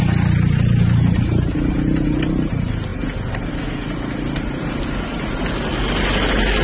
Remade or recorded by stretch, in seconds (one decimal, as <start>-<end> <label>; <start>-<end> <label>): 0.0-6.6 recorded